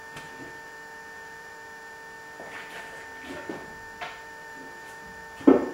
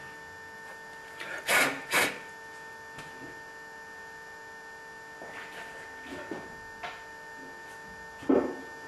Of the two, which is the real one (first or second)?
second